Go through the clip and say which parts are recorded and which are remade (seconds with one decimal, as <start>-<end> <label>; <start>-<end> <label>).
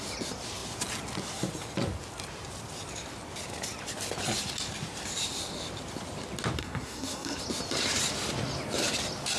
0.0-6.6 recorded; 6.6-7.4 remade; 7.4-9.4 recorded